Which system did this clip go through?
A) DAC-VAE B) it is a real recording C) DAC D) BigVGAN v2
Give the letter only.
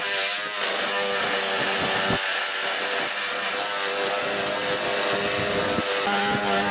B